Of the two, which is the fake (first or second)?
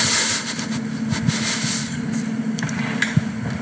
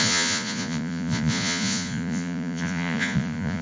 second